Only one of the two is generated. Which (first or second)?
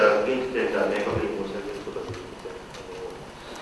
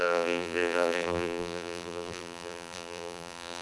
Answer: second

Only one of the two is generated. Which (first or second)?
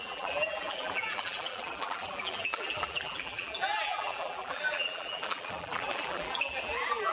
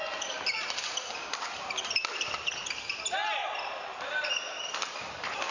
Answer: first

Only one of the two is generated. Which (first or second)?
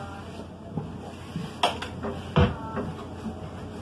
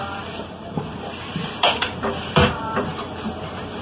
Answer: second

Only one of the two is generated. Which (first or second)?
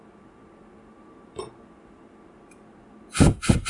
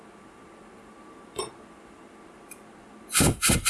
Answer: second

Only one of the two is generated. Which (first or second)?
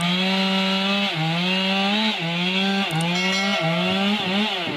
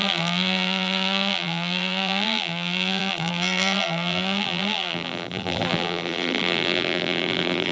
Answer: second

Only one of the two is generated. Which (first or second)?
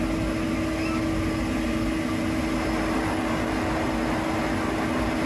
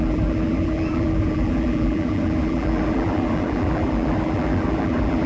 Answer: second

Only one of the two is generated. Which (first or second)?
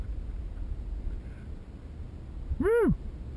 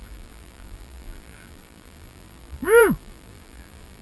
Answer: second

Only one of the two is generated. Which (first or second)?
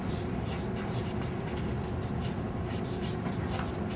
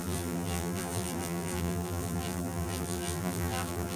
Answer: second